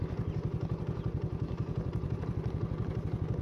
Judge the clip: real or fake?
real